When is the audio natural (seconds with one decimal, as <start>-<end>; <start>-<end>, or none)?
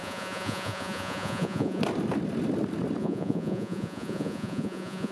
1.8-3.0